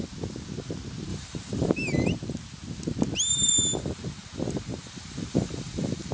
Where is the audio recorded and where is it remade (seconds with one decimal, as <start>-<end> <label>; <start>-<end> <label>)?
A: 0.0-1.1 recorded; 1.1-1.7 remade; 1.7-3.3 recorded; 3.3-6.1 remade